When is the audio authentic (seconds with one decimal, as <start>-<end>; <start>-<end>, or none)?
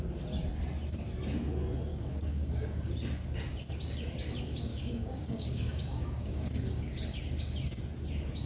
0.0-1.9; 2.8-4.7; 6.9-8.5